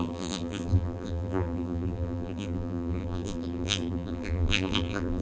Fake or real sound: fake